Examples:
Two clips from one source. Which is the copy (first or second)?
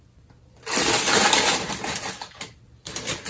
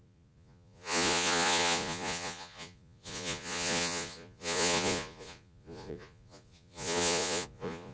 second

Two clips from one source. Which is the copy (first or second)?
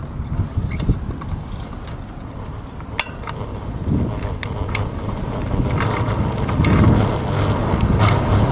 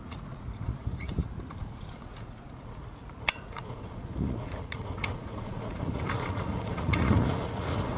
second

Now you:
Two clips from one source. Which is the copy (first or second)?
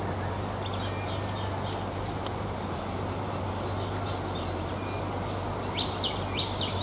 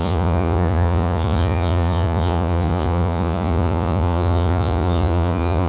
second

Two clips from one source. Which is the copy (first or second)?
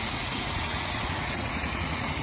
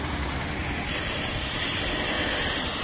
first